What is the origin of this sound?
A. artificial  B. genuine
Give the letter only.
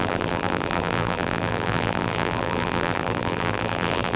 A